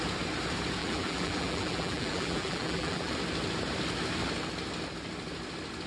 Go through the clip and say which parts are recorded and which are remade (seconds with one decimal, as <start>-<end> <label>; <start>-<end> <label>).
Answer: 0.0-0.8 recorded; 0.8-3.1 remade; 3.1-5.9 recorded